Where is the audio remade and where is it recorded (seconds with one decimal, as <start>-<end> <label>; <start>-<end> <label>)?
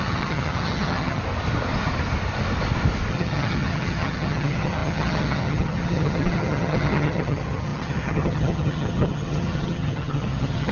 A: 0.0-1.2 remade; 1.2-3.1 recorded; 3.1-10.7 remade